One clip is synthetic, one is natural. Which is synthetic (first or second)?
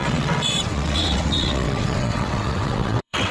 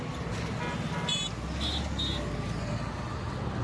first